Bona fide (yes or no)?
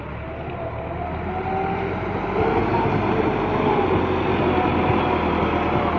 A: yes